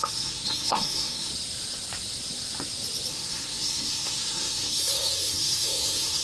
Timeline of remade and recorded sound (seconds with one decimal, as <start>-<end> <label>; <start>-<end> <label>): 0.0-1.3 remade; 1.3-3.1 recorded; 3.1-6.2 remade